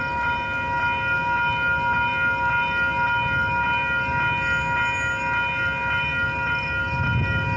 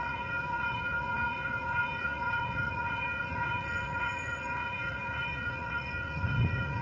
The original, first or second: first